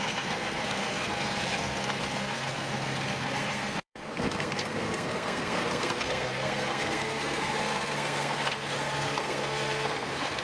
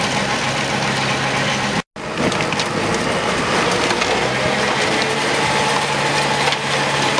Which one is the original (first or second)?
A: second